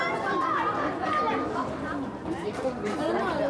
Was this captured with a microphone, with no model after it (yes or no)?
yes